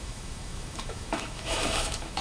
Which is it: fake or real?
fake